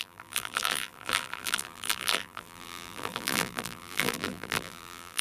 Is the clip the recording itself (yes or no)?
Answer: no